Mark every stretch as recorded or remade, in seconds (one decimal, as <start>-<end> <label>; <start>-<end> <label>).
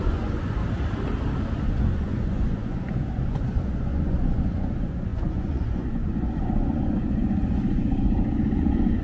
0.0-0.6 remade; 0.6-1.6 recorded; 1.6-9.0 remade